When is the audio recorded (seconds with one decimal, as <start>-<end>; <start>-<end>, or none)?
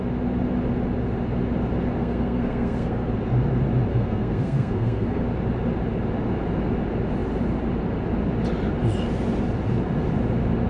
0.0-2.0; 3.1-3.9; 5.2-10.7